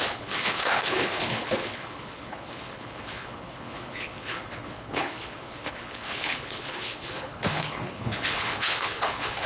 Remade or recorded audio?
remade